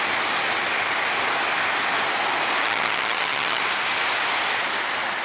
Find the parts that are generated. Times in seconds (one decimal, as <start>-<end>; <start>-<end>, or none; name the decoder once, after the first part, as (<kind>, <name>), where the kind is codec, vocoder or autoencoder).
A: 2.6-3.6 (vocoder, HiFi-GAN)

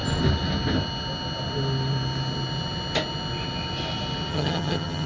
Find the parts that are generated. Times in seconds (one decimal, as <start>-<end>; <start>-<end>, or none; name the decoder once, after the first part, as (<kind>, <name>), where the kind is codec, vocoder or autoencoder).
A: 4.3-5.1 (vocoder, HiFi-GAN)

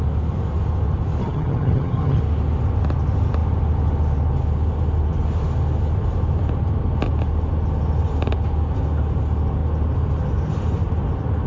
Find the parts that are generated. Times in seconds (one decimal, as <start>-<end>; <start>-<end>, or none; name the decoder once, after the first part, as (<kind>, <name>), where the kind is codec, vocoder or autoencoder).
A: 1.2-2.2 (vocoder, HiFi-GAN)

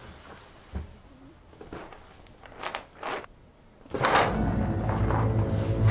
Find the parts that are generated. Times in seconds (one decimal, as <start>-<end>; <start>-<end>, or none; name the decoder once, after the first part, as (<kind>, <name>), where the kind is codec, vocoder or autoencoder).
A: none

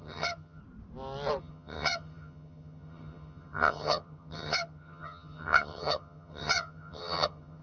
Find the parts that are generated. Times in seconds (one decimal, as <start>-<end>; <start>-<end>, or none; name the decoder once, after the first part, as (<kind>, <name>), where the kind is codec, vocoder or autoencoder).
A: 0.0-0.6 (vocoder, HiFi-GAN); 1.4-7.6

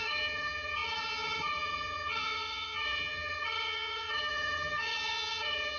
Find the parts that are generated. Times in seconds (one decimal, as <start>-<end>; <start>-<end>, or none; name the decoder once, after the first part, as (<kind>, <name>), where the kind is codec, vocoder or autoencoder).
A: 0.0-5.8 (vocoder, HiFi-GAN)